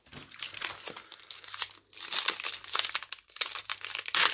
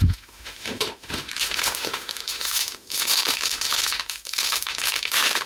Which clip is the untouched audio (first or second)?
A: first